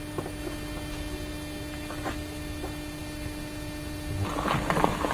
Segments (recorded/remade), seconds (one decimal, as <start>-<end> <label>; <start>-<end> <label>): 0.0-5.1 recorded

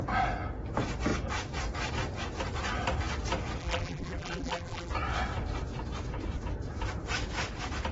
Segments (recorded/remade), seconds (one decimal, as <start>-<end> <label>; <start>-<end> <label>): 0.0-3.6 recorded; 3.6-4.9 remade; 4.9-7.9 recorded

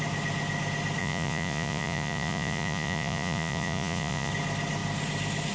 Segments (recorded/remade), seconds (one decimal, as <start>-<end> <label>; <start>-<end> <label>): 0.0-1.0 recorded; 1.0-4.3 remade; 4.3-5.5 recorded